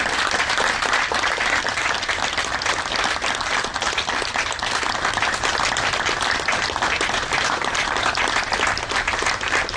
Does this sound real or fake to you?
fake